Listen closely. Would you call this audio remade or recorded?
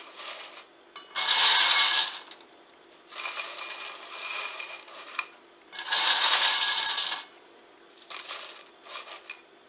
recorded